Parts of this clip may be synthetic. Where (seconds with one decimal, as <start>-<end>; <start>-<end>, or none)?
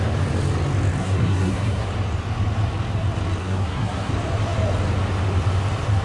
1.0-1.9; 3.4-4.1